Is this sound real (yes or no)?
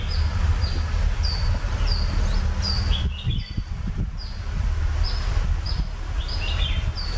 yes